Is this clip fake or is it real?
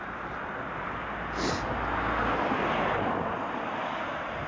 real